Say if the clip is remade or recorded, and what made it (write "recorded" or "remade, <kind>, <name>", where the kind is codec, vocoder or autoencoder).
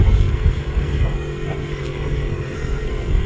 remade, codec, SNAC